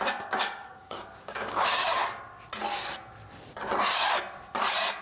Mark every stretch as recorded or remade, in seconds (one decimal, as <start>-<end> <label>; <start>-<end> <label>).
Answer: 0.0-2.0 remade; 2.0-5.0 recorded